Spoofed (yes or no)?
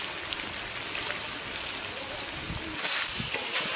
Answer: no